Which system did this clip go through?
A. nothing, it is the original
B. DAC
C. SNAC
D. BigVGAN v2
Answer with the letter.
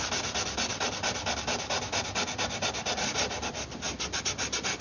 A